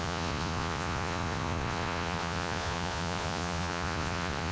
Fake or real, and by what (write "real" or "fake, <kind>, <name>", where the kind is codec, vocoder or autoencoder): fake, vocoder, Vocos